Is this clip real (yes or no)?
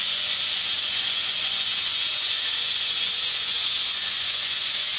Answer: no